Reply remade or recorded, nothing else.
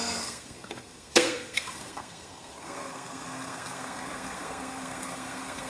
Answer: remade